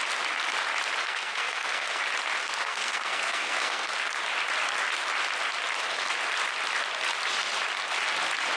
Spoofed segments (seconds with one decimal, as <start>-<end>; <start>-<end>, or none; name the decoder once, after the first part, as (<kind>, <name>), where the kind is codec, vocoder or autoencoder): 1.0-2.0 (codec, SNAC); 2.4-4.1